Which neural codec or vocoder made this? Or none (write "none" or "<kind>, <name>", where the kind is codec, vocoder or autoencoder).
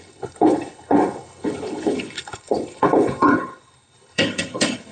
codec, HILCodec